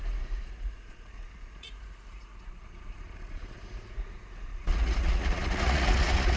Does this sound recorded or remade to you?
remade